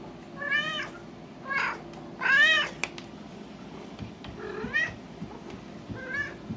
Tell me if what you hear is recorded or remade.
recorded